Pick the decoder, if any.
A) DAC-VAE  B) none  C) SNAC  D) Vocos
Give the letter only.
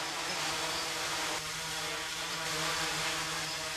B